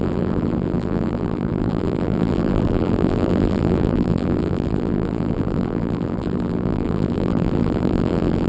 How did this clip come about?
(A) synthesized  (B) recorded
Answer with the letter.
A